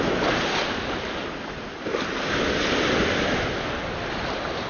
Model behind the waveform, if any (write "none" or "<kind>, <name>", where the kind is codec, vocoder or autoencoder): none